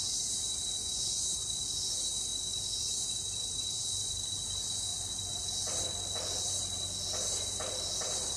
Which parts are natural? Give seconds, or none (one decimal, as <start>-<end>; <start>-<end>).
0.0-0.8; 1.6-8.4